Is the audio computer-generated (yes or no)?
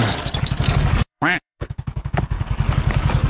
yes